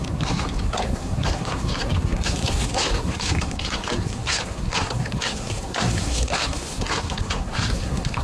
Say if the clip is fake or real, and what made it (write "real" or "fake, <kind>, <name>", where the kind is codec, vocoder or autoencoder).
fake, codec, SNAC